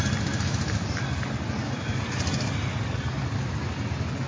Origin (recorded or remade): recorded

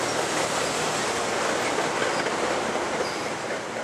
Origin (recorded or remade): recorded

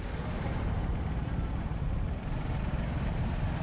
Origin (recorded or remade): recorded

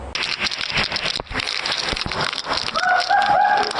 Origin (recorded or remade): recorded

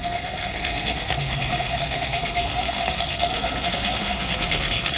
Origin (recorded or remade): remade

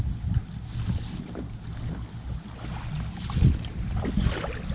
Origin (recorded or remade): recorded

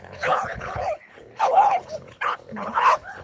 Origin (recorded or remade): remade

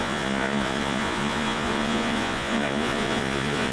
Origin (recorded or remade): remade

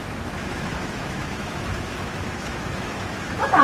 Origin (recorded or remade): remade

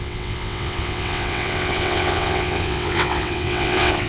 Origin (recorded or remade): remade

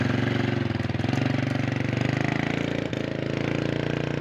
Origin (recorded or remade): recorded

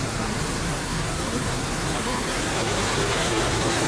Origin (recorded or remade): remade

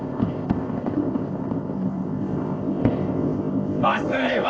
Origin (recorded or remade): remade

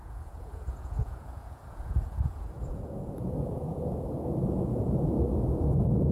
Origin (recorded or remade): remade